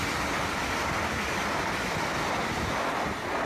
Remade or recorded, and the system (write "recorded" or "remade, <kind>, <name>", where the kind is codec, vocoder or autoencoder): recorded